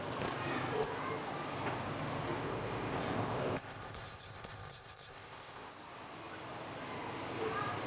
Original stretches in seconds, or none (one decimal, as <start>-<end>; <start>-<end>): 0.0-2.4; 5.7-7.9